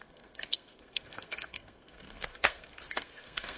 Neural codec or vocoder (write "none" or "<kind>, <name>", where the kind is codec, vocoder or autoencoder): codec, SNAC